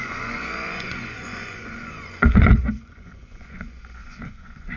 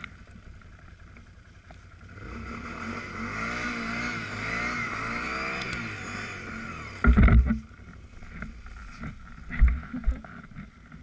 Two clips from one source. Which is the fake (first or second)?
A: first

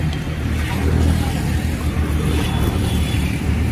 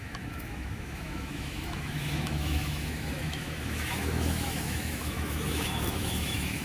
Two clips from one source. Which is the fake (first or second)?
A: second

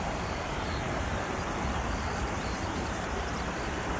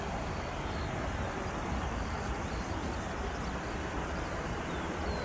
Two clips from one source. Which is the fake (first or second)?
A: first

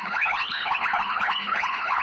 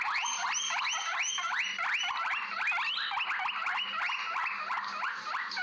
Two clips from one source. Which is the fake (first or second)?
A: first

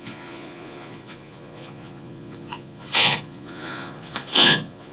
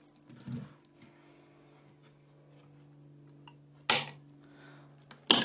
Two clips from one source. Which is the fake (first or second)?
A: first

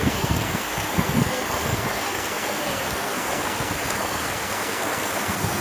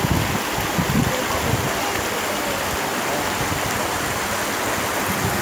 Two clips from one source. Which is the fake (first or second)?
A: first